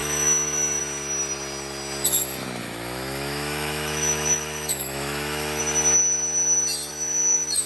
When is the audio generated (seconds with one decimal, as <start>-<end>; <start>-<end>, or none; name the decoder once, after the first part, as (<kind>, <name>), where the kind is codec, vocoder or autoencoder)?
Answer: 0.0-0.8 (autoencoder, DAC-VAE); 2.6-5.6; 6.9-7.7